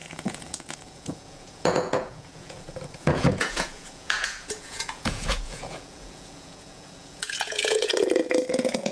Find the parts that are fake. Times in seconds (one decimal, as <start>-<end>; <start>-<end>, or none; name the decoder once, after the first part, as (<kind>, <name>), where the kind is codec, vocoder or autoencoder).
0.0-7.9 (vocoder, Vocos); 8.5-8.9